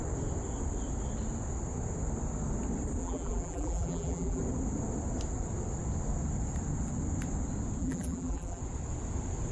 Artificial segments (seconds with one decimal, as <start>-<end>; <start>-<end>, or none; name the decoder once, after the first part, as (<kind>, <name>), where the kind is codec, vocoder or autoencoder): 3.0-4.4 (vocoder, BigVGAN v2); 7.8-8.6